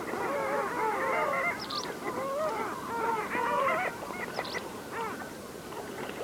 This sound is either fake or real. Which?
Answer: real